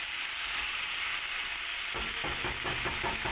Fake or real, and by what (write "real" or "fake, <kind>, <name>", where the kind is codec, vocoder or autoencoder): fake, vocoder, BigVGAN v2